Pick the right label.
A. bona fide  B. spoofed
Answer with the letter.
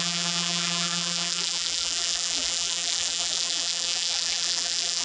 B